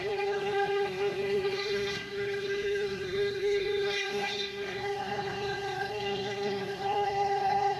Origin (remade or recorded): remade